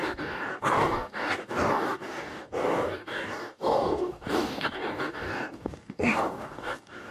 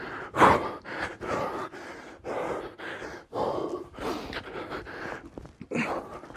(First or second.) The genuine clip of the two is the second